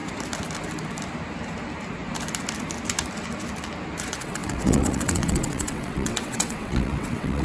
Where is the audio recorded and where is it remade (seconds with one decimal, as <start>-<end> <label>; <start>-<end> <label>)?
0.0-4.0 recorded; 4.0-7.4 remade